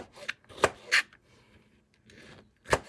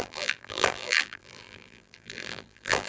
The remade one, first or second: second